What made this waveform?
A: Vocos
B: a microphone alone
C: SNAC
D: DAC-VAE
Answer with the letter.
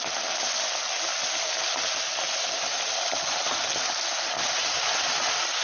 B